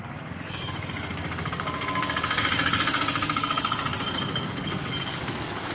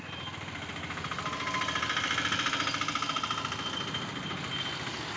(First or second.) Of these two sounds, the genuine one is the second